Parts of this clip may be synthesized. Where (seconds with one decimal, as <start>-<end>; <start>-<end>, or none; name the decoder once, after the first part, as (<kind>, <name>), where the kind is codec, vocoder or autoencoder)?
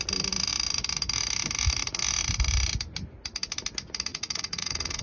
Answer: 4.1-5.0 (vocoder, Vocos)